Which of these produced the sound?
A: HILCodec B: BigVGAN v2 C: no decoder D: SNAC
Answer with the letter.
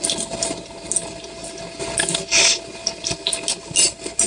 C